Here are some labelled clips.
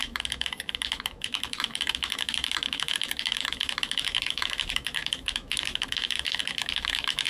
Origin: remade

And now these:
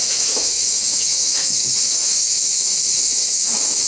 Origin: remade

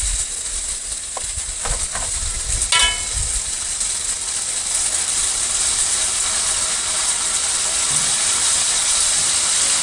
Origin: recorded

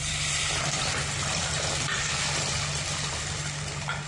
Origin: remade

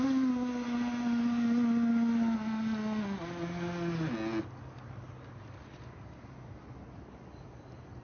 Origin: recorded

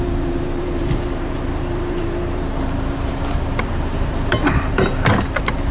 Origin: remade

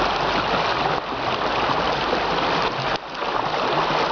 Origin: recorded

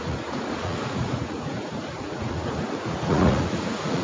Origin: remade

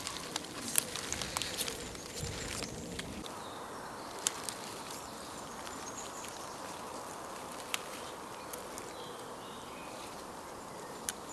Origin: remade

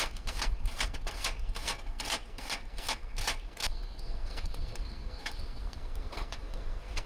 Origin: remade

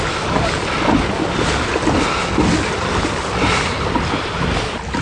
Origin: recorded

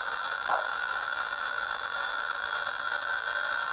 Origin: remade